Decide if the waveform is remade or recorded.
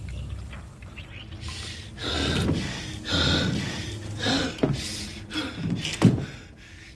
recorded